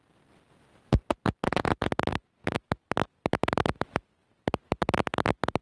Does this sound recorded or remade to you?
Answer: recorded